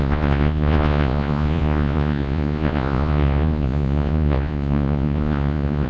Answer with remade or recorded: remade